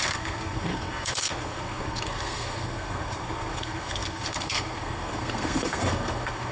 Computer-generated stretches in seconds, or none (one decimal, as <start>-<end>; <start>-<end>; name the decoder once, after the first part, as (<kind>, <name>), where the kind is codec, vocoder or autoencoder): 0.0-6.5 (codec, SNAC)